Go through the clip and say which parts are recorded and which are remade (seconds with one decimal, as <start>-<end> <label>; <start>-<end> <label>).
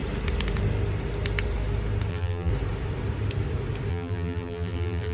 0.0-2.1 recorded; 2.1-2.5 remade; 2.5-3.9 recorded; 3.9-5.1 remade